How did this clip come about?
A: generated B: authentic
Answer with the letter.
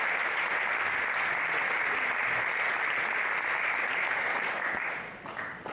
B